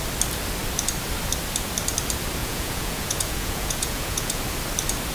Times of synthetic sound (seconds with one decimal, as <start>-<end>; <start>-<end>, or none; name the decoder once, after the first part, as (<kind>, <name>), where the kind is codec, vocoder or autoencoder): 2.4-4.4 (vocoder, Vocos)